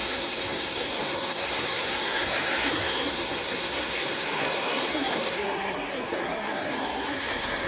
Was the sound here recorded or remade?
remade